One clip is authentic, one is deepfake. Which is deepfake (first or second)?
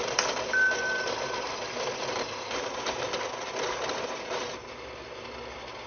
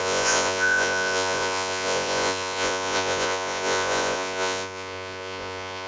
second